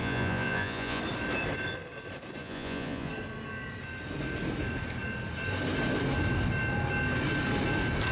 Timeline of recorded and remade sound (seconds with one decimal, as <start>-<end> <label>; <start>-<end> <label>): 0.0-1.0 remade; 1.0-2.4 recorded; 2.4-3.1 remade; 3.1-8.1 recorded